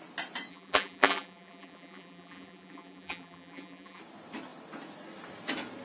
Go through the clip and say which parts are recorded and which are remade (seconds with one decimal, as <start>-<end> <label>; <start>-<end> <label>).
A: 0.0-0.5 recorded; 0.5-4.0 remade; 4.0-5.8 recorded